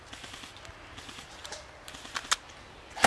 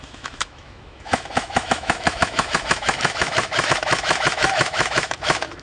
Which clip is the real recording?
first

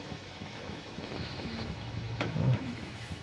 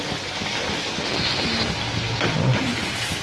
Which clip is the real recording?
second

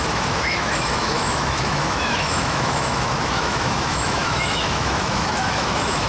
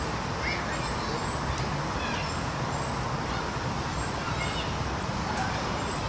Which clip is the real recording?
second